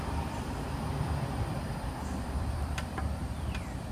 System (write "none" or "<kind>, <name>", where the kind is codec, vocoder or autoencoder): vocoder, BigVGAN v2